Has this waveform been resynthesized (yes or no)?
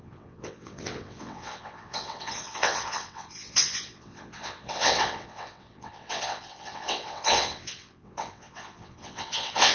yes